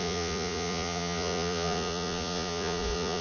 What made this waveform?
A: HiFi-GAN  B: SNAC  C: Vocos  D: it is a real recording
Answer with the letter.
C